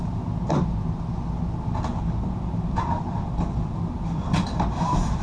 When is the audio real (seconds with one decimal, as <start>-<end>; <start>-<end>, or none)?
0.0-1.9